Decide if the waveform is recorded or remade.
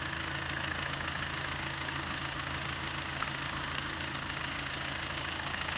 remade